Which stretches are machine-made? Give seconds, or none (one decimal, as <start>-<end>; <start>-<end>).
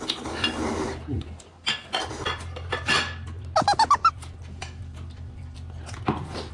none